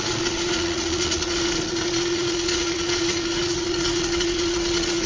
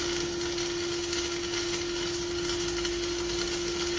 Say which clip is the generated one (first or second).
first